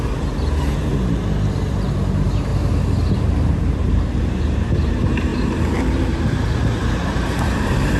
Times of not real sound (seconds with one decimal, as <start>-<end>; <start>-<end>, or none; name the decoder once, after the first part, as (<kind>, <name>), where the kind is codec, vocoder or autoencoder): 0.0-0.9 (vocoder, BigVGAN v2); 1.7-2.5; 3.5-8.0